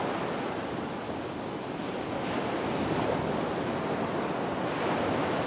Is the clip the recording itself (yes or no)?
yes